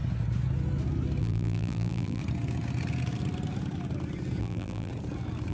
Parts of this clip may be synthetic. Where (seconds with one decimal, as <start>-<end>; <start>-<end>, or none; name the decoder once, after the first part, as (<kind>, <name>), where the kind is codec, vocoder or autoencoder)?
1.2-2.2 (vocoder, BigVGAN v2); 4.4-4.9